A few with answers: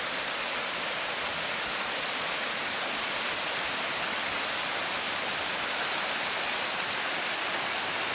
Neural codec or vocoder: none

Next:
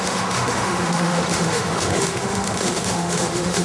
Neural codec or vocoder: autoencoder, DAC-VAE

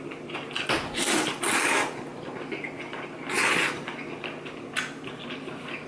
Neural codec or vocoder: none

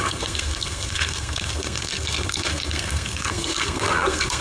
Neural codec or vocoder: codec, SNAC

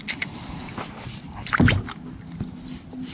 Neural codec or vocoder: none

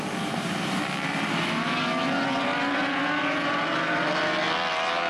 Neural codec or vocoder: none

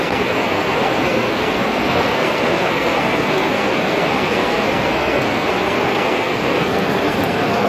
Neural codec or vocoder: codec, SNAC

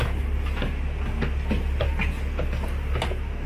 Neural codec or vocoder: none